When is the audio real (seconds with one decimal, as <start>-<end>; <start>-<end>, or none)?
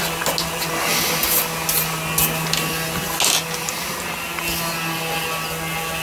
0.0-6.0